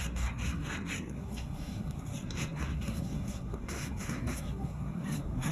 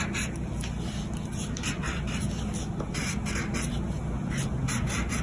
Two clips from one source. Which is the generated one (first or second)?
first